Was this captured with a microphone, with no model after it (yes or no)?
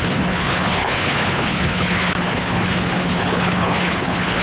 no